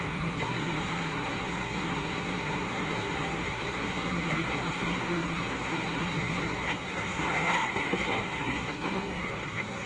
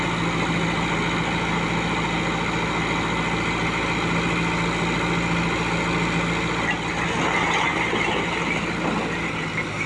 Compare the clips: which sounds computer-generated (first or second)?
first